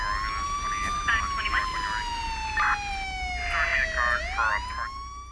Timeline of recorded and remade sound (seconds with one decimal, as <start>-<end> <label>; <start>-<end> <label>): 0.0-5.3 recorded